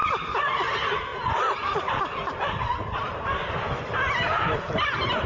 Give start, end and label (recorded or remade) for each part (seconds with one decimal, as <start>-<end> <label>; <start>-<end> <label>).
0.0-5.3 recorded